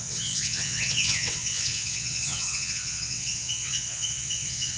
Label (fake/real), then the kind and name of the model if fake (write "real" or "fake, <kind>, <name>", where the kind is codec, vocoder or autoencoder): fake, vocoder, WaveNeXt